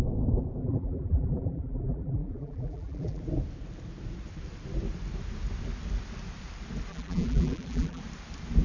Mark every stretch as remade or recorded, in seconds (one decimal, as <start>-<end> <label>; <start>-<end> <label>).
0.0-0.6 recorded; 0.6-3.2 remade; 3.2-6.9 recorded; 6.9-8.0 remade; 8.0-8.6 recorded